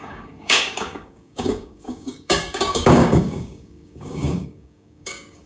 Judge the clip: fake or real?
fake